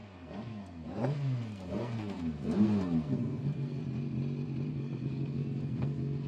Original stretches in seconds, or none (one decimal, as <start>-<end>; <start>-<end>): 3.8-4.7